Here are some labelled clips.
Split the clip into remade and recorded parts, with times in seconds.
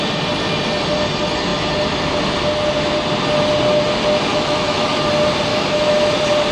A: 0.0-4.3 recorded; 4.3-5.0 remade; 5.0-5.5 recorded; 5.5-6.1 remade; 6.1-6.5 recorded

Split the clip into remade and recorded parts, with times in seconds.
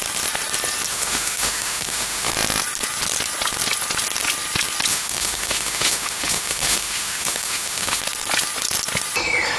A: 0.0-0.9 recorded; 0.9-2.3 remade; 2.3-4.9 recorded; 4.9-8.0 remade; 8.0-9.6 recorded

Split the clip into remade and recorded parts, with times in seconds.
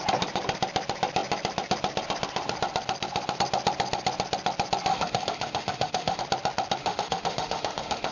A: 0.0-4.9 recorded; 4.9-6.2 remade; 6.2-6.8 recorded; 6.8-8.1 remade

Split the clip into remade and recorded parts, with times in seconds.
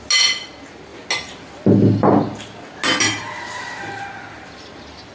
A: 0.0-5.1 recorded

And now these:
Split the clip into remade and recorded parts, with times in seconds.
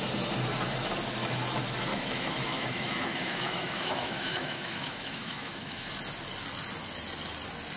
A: 0.0-1.9 recorded; 1.9-5.9 remade; 5.9-7.8 recorded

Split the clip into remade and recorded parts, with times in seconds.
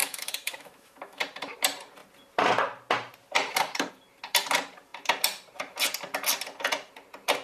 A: 0.0-1.2 remade; 1.2-7.4 recorded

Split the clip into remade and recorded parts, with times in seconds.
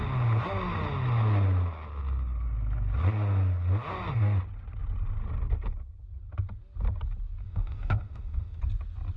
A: 0.0-7.4 recorded; 7.4-8.6 remade; 8.6-9.2 recorded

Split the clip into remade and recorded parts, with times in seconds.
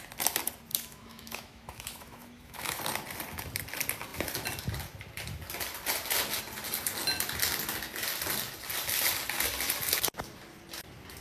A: 0.0-0.7 recorded; 0.7-2.8 remade; 2.8-11.2 recorded